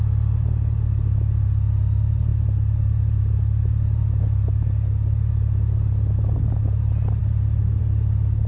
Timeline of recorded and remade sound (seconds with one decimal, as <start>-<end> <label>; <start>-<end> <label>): 0.0-8.5 recorded